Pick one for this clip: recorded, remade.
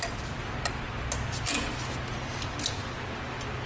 recorded